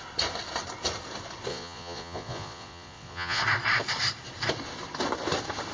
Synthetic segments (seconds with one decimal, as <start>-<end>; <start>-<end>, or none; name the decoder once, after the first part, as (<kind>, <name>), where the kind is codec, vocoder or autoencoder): 1.5-3.4 (vocoder, Vocos)